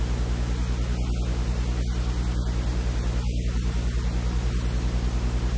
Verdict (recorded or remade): recorded